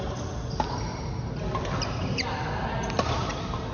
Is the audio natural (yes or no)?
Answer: yes